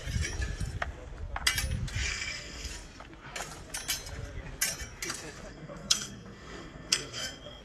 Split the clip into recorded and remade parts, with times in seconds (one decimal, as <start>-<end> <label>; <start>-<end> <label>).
0.0-2.1 recorded; 2.1-2.7 remade; 2.7-5.5 recorded; 5.5-7.6 remade